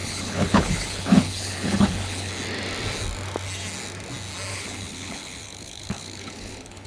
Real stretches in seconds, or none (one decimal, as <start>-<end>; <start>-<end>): 2.3-4.5